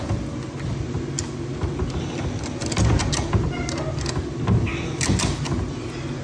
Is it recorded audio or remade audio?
recorded